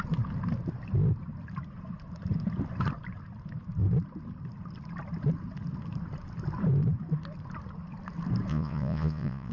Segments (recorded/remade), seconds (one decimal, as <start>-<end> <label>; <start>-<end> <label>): 0.0-8.5 recorded; 8.5-9.5 remade